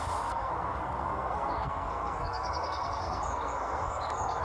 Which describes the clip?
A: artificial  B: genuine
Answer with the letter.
A